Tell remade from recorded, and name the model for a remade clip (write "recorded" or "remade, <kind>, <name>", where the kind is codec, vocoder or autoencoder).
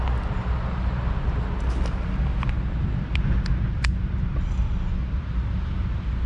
recorded